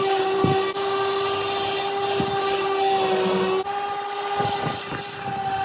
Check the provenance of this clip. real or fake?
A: real